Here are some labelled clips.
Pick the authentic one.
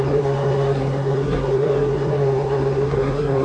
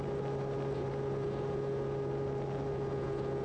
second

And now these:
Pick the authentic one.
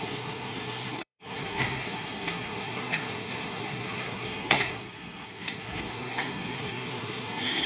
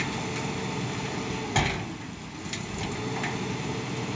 second